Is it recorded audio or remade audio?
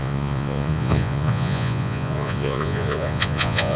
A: remade